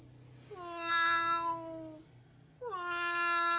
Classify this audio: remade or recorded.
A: recorded